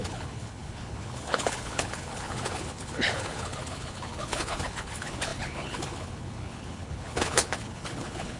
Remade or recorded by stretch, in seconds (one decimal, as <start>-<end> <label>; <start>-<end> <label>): 0.0-8.4 remade